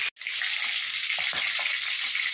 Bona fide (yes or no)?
yes